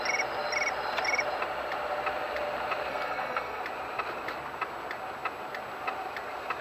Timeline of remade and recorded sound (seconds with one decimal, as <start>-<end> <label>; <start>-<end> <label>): 0.0-2.9 recorded; 2.9-3.6 remade; 3.6-6.6 recorded